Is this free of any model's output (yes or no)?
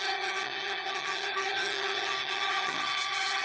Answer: no